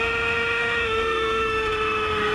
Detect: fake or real fake